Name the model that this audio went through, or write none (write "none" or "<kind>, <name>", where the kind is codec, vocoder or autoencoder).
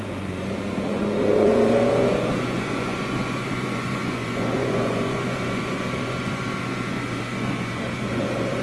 vocoder, Vocos